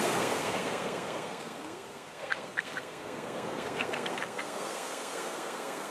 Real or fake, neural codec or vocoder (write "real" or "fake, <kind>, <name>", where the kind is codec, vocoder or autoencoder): fake, codec, SNAC